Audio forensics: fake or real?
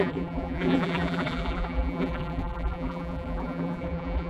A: fake